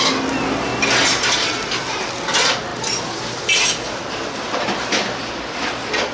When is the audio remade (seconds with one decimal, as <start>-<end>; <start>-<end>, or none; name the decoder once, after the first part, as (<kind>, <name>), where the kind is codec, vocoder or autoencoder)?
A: none